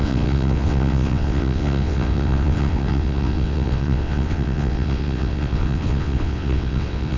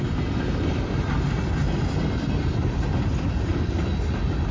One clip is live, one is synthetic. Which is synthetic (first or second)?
first